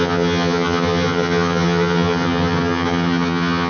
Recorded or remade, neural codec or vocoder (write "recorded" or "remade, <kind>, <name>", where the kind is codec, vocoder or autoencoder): remade, vocoder, HiFi-GAN